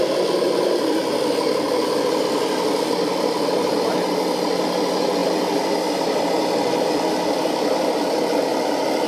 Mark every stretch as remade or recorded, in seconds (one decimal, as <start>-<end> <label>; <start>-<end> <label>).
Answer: 0.0-5.2 recorded; 5.2-6.2 remade; 6.2-9.1 recorded